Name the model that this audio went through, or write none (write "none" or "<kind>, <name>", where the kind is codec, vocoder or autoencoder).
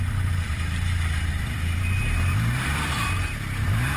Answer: vocoder, BigVGAN v2